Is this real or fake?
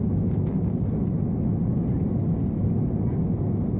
real